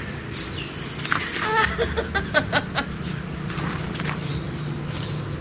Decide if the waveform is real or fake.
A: real